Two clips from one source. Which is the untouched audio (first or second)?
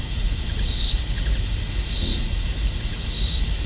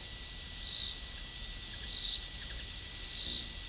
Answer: second